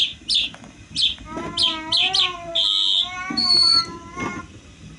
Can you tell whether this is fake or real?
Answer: real